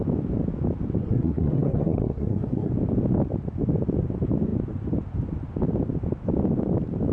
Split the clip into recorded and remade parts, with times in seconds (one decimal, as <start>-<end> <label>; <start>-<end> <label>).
0.0-1.0 recorded; 1.0-2.7 remade; 2.7-7.1 recorded